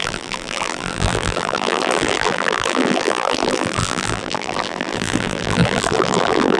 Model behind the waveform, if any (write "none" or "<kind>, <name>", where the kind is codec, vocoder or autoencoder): vocoder, BigVGAN v2